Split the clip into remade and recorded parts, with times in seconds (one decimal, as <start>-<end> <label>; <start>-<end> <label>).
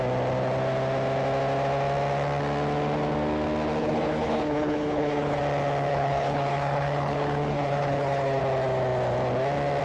0.0-3.8 recorded; 3.8-5.4 remade; 5.4-5.9 recorded; 5.9-8.4 remade; 8.4-9.8 recorded